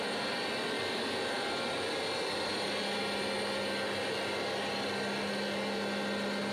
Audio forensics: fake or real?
real